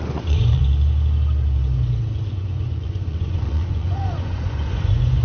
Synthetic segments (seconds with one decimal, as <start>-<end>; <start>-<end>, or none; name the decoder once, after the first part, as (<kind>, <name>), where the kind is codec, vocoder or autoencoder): 0.0-0.6 (vocoder, Vocos); 2.3-5.2